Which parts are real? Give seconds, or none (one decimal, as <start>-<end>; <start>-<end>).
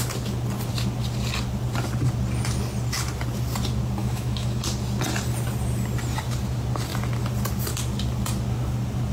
0.0-4.0; 4.6-9.1